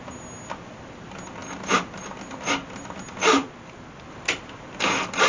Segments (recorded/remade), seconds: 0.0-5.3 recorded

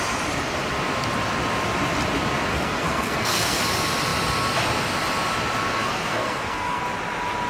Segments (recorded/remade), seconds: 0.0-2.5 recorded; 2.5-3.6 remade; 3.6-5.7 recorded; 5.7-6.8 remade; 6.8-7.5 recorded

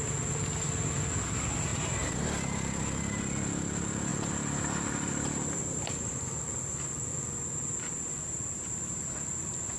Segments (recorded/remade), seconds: 0.0-9.8 recorded

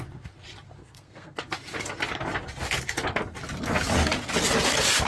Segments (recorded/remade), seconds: 0.0-0.8 recorded; 0.8-1.4 remade; 1.4-5.1 recorded

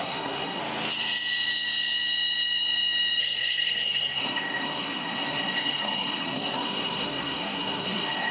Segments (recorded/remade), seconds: 0.0-0.6 remade; 0.6-3.2 recorded; 3.2-8.3 remade